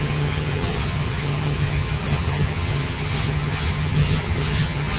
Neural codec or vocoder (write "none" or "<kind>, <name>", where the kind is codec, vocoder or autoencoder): vocoder, HiFi-GAN